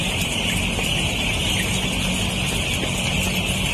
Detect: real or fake real